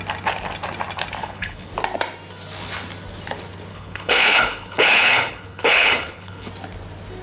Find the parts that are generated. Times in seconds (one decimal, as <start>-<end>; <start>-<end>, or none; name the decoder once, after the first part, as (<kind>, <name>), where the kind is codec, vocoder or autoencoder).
1.2-1.7 (codec, HILCodec); 3.7-6.5